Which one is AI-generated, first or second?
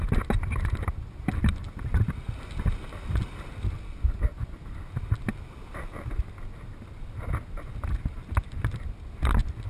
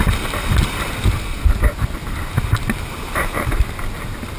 second